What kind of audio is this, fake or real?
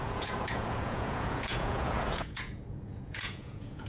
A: fake